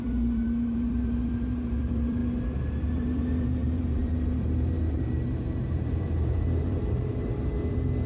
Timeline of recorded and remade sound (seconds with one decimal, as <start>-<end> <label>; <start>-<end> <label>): 0.0-2.2 remade; 2.2-2.9 recorded; 2.9-8.1 remade